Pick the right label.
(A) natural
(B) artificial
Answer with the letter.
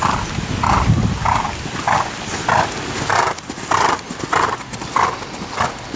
A